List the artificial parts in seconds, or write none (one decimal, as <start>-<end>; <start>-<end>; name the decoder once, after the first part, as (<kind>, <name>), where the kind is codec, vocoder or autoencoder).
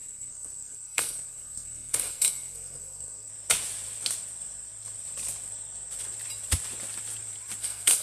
0.0-3.3 (codec, SNAC); 7.6-8.0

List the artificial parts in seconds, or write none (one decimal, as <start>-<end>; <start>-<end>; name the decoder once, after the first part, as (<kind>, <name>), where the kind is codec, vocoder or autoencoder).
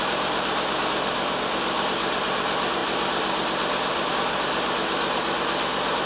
2.8-4.1 (vocoder, BigVGAN v2)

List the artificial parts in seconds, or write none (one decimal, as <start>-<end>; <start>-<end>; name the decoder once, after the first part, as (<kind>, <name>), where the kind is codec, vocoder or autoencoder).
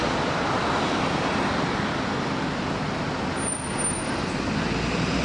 none